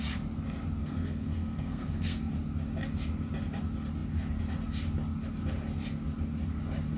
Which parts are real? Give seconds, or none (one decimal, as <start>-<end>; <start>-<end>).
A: 0.0-0.8; 2.3-7.0